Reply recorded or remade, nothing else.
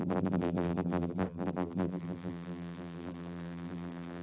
remade